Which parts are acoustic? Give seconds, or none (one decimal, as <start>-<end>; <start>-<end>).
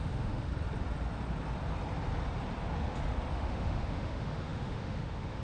0.5-3.3